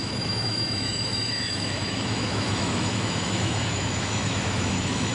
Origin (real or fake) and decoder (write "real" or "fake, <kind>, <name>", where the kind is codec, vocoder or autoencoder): fake, autoencoder, DAC-VAE